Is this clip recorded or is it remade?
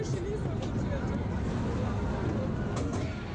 recorded